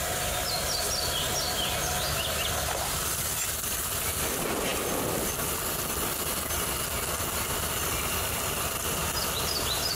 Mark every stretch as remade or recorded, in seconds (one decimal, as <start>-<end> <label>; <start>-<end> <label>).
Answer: 0.0-9.9 recorded

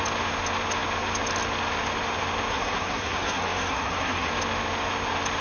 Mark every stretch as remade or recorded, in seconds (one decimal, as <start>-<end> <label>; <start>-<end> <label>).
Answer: 0.0-2.5 recorded; 2.5-4.3 remade; 4.3-5.4 recorded

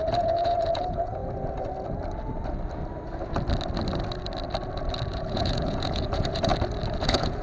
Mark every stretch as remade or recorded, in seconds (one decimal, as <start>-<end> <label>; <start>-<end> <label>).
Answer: 0.0-1.2 remade; 1.2-5.1 recorded; 5.1-6.5 remade; 6.5-7.0 recorded; 7.0-7.4 remade

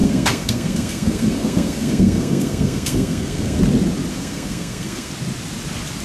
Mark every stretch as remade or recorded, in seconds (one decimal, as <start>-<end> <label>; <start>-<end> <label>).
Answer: 0.0-3.6 remade; 3.6-4.1 recorded; 4.1-5.1 remade; 5.1-6.0 recorded